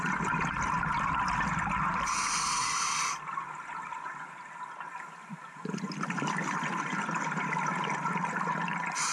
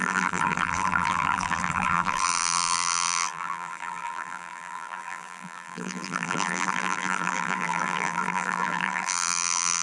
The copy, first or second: second